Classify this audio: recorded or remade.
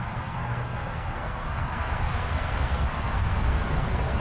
remade